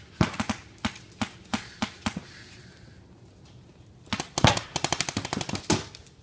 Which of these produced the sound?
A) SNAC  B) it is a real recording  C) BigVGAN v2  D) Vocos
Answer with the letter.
B